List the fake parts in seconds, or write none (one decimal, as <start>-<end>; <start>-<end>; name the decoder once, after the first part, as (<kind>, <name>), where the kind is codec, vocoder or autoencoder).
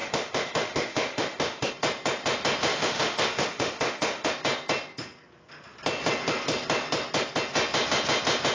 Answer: 0.0-1.7 (autoencoder, DAC-VAE); 2.7-4.3